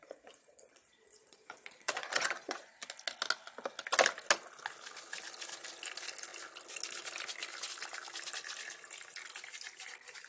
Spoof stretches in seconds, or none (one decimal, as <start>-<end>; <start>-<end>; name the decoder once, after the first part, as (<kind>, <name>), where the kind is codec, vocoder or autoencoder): 0.0-2.9 (vocoder, Vocos)